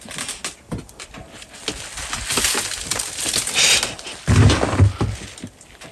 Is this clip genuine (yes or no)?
yes